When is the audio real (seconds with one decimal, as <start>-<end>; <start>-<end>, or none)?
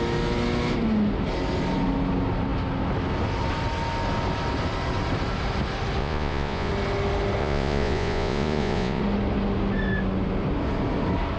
0.0-6.0; 6.7-7.4; 9.0-11.4